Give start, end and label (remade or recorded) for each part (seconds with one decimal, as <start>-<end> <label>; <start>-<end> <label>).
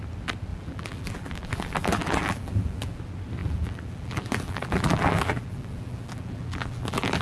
0.0-0.5 recorded; 0.5-3.0 remade; 3.0-3.4 recorded; 3.4-7.2 remade